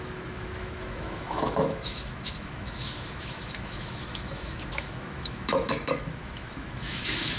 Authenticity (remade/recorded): remade